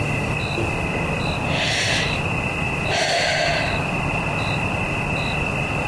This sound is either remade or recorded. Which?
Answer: recorded